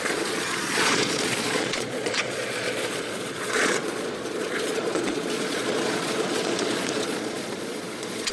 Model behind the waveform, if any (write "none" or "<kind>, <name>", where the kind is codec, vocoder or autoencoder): vocoder, Vocos